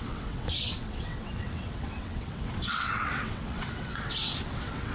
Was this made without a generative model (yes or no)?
no